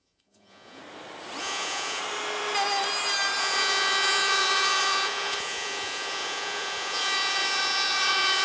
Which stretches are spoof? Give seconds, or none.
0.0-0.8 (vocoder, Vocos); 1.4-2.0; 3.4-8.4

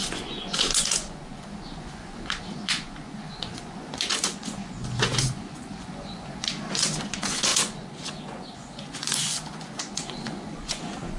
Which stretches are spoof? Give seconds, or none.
0.0-11.2 (vocoder, Vocos)